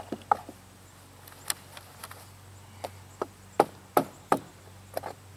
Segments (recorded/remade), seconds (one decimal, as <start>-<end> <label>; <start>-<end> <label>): 0.0-5.4 recorded